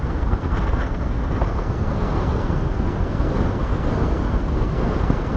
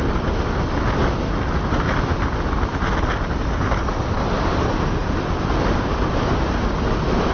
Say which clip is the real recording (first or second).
second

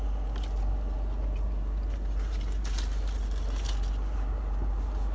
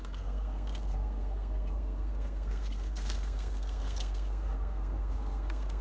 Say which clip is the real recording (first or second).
first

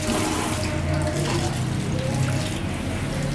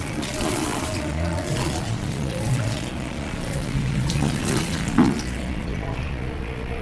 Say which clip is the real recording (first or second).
first